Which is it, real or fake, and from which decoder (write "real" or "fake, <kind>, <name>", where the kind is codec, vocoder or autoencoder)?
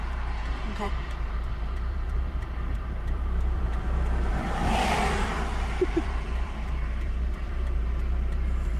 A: fake, vocoder, BigVGAN v2